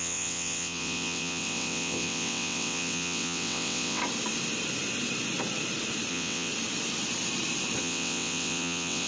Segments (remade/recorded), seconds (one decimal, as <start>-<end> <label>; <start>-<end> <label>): 0.0-4.0 remade; 4.0-6.1 recorded; 6.1-6.5 remade; 6.5-7.8 recorded; 7.8-9.1 remade